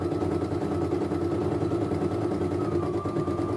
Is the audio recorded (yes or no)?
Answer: yes